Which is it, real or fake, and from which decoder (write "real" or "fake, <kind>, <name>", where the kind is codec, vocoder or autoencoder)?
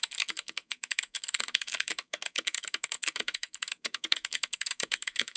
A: fake, codec, SNAC